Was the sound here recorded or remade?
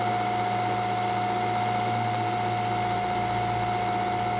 recorded